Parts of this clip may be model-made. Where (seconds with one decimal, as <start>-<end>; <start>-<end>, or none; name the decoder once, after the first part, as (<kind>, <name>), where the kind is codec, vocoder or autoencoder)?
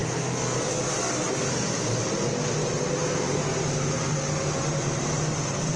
none